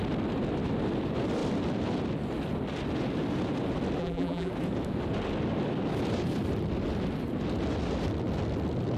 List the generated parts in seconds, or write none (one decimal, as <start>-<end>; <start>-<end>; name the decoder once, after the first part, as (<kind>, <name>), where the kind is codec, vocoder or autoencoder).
4.0-4.5 (vocoder, BigVGAN v2)